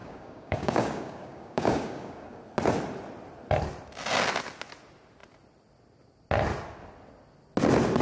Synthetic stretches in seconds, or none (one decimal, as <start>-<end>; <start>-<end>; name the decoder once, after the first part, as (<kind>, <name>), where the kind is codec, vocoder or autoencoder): 0.0-2.4 (codec, DAC)